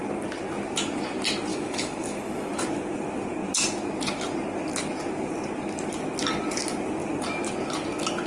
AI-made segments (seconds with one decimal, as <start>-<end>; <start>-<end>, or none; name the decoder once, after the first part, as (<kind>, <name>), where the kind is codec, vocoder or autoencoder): 1.5-2.5 (autoencoder, DAC-VAE)